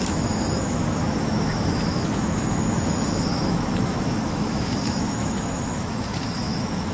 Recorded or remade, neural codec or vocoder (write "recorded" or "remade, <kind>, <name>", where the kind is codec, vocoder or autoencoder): remade, autoencoder, DAC-VAE